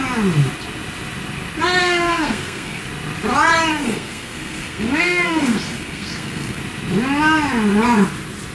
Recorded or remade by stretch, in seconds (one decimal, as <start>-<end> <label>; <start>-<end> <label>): 0.0-1.8 recorded; 1.8-2.8 remade; 2.8-3.7 recorded; 3.7-6.6 remade; 6.6-8.5 recorded